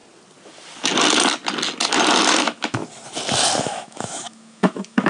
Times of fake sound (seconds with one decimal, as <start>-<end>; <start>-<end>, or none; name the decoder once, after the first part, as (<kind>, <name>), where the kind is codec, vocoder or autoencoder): 2.4-2.8 (autoencoder, DAC-VAE); 3.6-5.1